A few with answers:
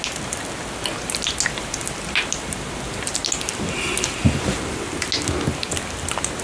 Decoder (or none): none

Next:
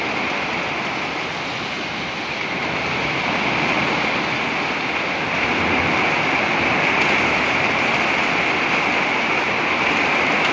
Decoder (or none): none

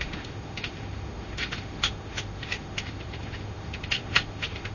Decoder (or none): autoencoder, DAC-VAE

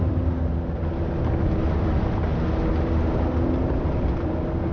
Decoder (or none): none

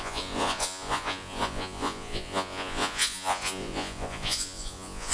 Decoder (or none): vocoder, Vocos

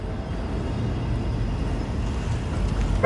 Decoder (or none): none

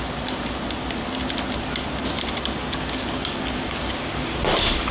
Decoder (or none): none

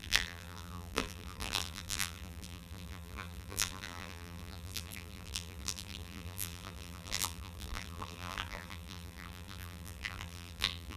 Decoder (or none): vocoder, BigVGAN v2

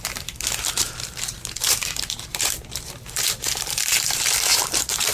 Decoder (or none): vocoder, BigVGAN v2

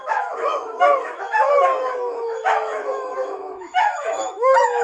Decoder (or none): autoencoder, DAC-VAE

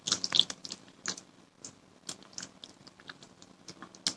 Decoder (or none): none